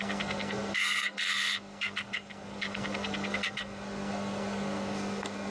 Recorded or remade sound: remade